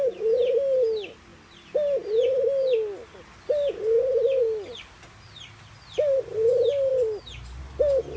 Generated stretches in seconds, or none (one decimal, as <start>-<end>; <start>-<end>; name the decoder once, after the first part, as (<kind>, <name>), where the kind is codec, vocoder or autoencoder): none